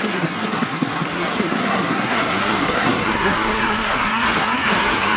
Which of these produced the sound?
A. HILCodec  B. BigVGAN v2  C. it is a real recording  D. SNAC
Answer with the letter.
D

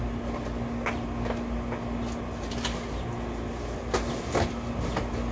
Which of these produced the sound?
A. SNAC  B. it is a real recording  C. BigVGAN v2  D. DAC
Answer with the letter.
B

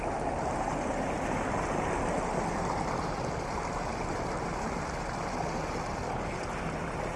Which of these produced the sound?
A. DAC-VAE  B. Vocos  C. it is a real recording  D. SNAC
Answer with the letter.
C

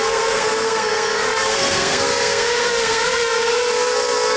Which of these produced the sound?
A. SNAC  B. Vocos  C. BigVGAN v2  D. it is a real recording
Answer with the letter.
A